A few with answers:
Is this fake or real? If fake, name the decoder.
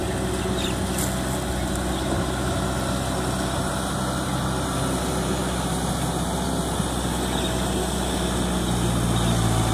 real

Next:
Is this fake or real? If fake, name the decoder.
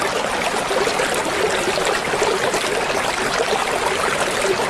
real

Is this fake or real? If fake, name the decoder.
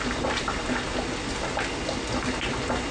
real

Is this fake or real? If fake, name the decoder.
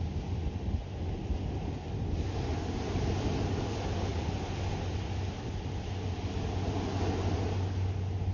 real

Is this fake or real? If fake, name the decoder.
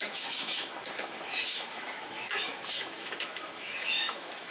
fake, autoencoder, DAC-VAE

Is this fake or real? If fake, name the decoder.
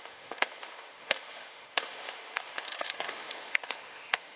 fake, autoencoder, DAC-VAE